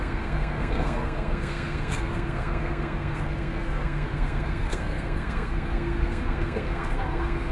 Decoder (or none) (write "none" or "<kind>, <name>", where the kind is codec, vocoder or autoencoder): codec, SNAC